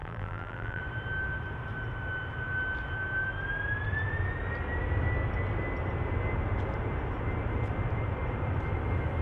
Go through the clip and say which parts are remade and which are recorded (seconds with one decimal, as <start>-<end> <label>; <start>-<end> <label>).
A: 0.0-0.8 remade; 0.8-9.2 recorded